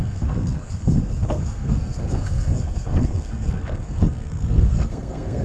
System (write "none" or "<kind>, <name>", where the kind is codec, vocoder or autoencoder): codec, SNAC